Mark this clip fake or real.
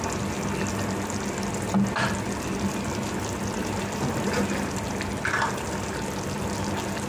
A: real